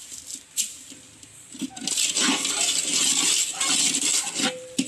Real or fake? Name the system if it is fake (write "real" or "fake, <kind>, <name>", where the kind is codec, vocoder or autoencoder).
real